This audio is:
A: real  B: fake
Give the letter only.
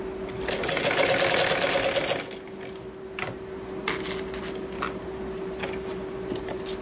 A